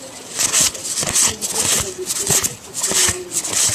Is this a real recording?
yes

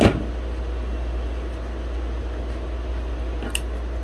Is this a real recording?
yes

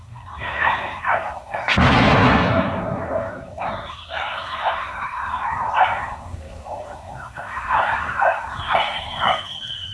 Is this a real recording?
no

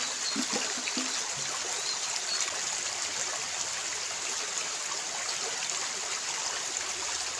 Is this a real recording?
yes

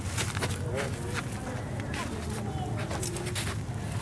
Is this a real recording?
yes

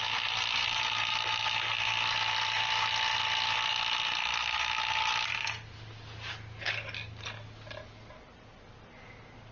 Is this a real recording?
yes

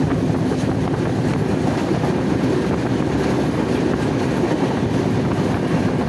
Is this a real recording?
yes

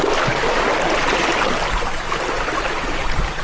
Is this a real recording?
yes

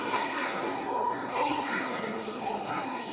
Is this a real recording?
no